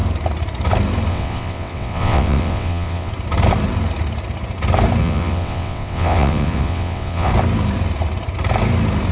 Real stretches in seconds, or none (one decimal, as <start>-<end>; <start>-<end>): 0.0-1.1; 3.1-5.0; 7.3-9.1